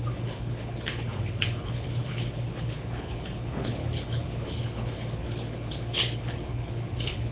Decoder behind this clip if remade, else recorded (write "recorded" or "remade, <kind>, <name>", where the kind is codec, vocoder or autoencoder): remade, codec, HILCodec